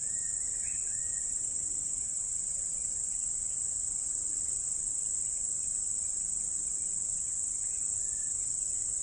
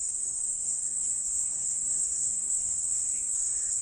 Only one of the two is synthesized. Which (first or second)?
second